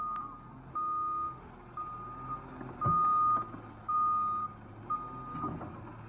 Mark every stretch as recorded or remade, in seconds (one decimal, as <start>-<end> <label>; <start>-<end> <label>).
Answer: 0.0-0.7 recorded; 0.7-1.5 remade; 1.5-6.1 recorded